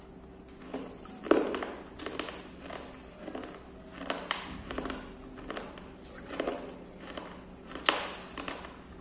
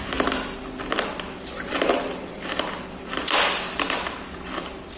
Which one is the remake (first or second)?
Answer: second